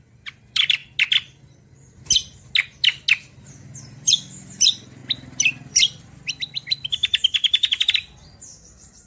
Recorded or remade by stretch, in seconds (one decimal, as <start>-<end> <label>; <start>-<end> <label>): 0.0-0.8 remade; 0.8-3.8 recorded; 3.8-5.0 remade; 5.0-5.7 recorded; 5.7-9.1 remade